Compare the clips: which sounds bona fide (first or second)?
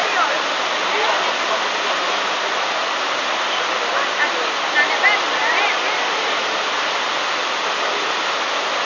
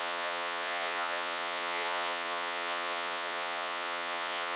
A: first